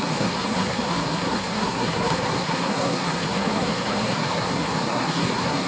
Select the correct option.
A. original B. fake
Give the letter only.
B